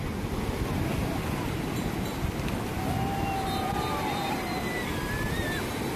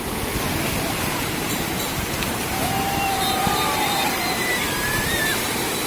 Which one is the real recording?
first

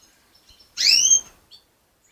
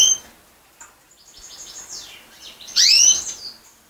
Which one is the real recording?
second